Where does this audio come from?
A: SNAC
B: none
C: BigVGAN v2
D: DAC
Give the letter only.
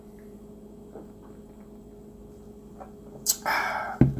B